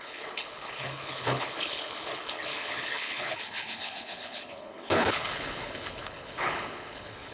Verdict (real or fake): fake